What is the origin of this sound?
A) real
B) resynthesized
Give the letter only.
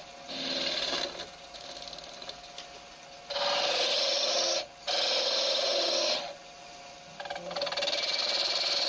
A